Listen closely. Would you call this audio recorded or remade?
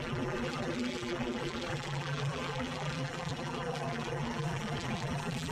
remade